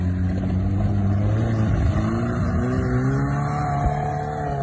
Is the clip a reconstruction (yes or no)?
no